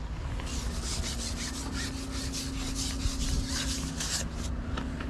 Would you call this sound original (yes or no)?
yes